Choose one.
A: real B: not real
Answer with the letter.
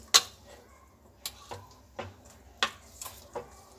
A